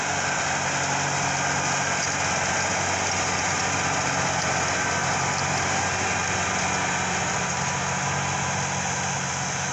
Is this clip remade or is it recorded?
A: recorded